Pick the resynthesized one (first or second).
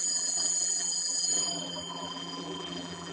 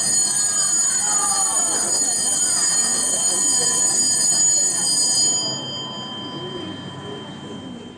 first